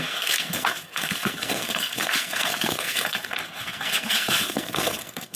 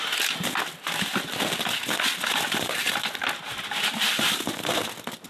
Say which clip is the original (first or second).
second